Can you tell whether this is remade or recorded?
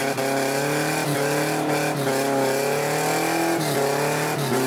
recorded